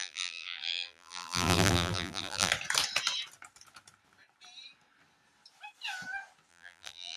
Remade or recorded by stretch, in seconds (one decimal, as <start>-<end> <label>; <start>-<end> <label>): 0.0-2.5 remade; 2.5-6.5 recorded; 6.5-7.2 remade